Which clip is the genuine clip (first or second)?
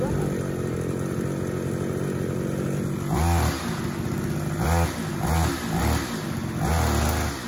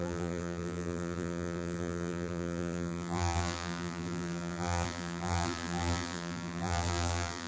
first